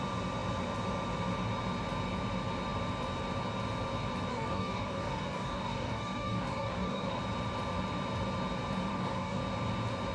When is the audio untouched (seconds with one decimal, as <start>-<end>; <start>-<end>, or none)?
0.0-4.3; 7.2-8.9; 9.4-10.1